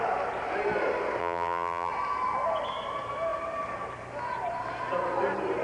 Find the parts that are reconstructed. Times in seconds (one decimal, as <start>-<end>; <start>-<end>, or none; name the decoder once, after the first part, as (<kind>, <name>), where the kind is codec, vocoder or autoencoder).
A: 1.2-1.9 (vocoder, BigVGAN v2)